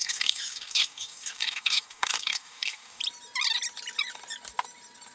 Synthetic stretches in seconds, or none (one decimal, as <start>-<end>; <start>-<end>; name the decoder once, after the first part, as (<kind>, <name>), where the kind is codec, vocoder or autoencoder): 0.0-3.0 (codec, DAC)

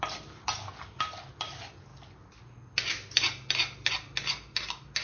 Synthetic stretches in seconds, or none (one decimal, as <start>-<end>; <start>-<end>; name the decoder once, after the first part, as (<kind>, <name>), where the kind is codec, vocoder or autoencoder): none